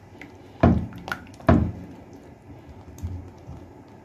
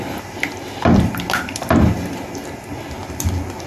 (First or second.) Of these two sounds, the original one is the first